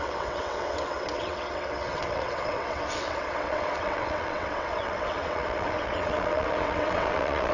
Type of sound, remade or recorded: remade